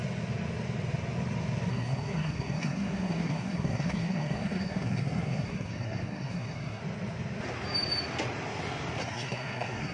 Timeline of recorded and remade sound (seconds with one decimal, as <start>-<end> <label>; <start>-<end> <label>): 0.0-1.7 recorded; 1.7-6.8 remade; 6.8-9.0 recorded; 9.0-9.9 remade